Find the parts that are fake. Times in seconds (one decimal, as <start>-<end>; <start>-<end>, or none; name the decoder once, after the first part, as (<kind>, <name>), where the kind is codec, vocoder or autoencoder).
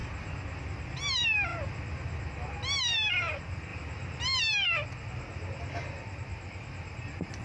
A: none